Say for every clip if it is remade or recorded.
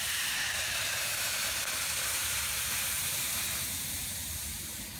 recorded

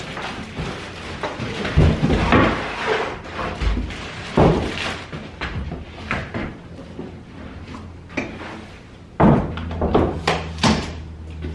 recorded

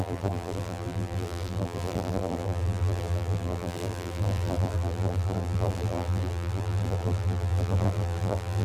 remade